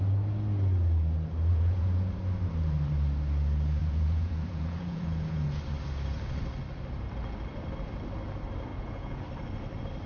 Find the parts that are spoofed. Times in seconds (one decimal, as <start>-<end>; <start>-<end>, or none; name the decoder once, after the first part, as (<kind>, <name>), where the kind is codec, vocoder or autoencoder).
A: 1.5-2.1 (vocoder, Vocos); 3.8-5.6; 8.7-9.2